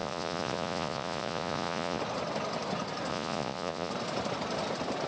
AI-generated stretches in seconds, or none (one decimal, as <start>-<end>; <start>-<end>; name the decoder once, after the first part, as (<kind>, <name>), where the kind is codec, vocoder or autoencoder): 0.0-2.0 (vocoder, Vocos); 3.1-3.9